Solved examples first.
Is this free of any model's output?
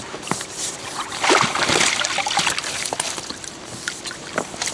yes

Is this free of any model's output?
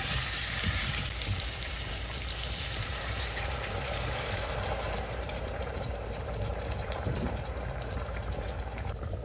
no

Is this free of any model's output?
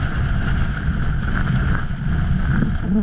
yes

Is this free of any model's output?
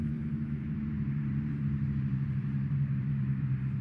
no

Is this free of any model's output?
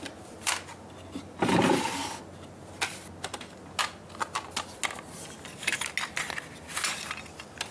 yes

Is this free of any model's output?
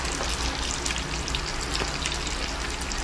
yes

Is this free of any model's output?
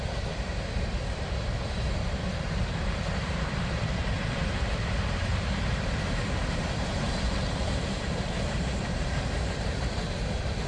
no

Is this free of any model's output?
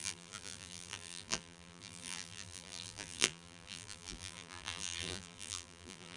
no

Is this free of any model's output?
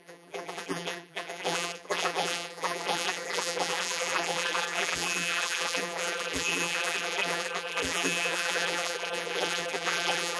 no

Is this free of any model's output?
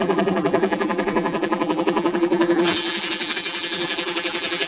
no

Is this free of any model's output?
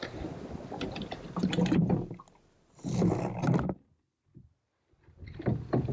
yes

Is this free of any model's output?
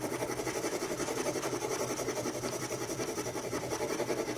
no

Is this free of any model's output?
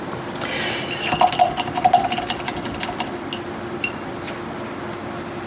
yes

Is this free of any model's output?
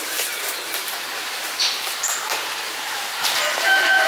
no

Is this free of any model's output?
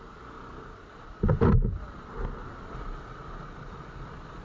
no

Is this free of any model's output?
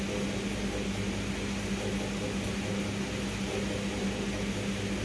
yes